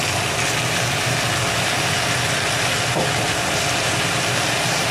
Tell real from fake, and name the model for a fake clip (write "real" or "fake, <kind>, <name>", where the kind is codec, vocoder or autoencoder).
real